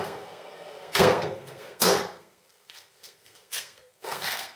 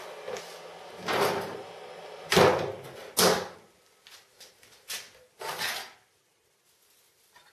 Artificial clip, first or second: first